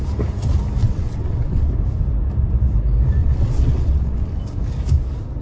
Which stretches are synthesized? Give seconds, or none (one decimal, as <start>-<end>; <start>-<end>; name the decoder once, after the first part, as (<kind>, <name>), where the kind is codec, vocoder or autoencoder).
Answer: 0.8-1.7 (vocoder, WaveNeXt); 3.2-4.4